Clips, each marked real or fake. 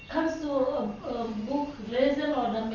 real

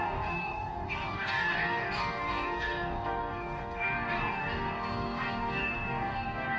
fake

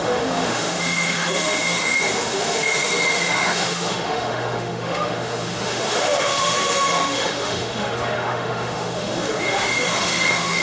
fake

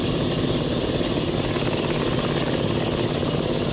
real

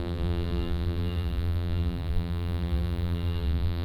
fake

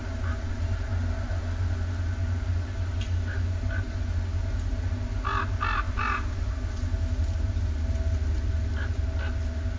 real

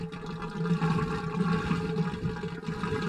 real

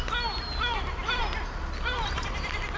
real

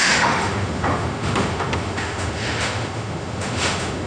fake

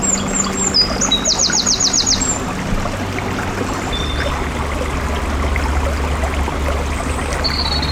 real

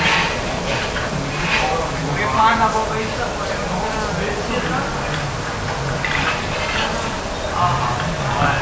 real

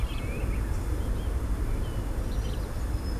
real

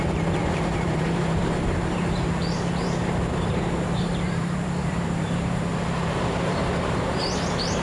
fake